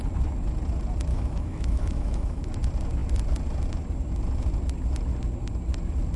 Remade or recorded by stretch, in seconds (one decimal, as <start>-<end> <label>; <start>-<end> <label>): 0.0-1.1 recorded; 1.1-2.5 remade; 2.5-6.2 recorded